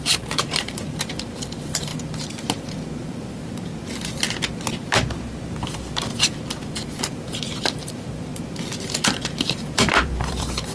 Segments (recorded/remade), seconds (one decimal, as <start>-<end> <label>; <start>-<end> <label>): 0.0-1.9 remade; 1.9-3.0 recorded; 3.0-3.7 remade; 3.7-7.2 recorded; 7.2-8.3 remade; 8.3-9.0 recorded; 9.0-10.7 remade